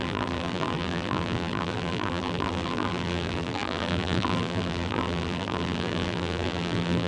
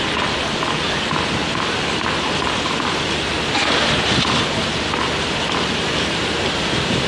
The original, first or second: second